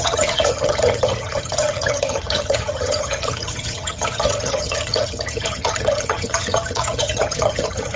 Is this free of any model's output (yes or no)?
no